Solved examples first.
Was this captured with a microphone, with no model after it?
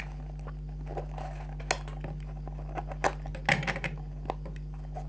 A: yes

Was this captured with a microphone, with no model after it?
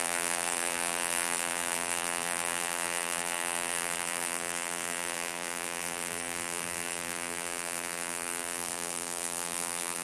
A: no